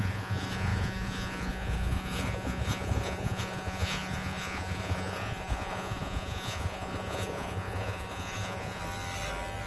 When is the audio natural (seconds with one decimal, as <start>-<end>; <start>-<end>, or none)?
8.8-9.7